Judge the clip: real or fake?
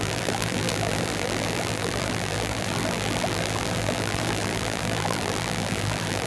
fake